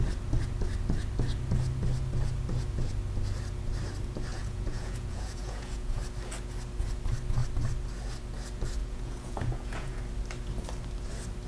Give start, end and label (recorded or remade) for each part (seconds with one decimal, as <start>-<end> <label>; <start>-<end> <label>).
0.0-4.3 recorded; 4.3-6.0 remade; 6.0-8.8 recorded; 8.8-10.0 remade; 10.0-11.5 recorded